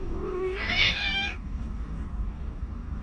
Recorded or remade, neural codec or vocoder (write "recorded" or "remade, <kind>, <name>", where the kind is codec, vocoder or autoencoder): remade, codec, DAC